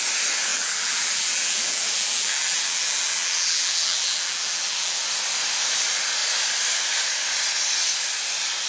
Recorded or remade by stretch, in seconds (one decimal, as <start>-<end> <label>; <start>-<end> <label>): 0.0-0.5 recorded; 0.5-5.0 remade; 5.0-8.7 recorded

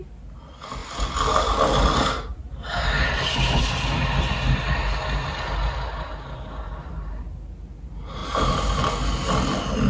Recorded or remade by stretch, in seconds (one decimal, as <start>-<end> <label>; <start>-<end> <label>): 0.0-2.3 recorded; 2.3-3.6 remade; 3.6-8.2 recorded; 8.2-8.8 remade; 8.8-9.9 recorded